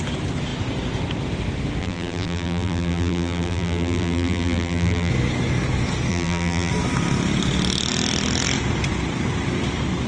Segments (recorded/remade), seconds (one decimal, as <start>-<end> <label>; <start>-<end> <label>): 0.0-1.8 recorded; 1.8-5.1 remade; 5.1-6.1 recorded; 6.1-6.7 remade; 6.7-10.1 recorded